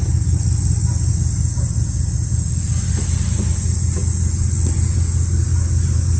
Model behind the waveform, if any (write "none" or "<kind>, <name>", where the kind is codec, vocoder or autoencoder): none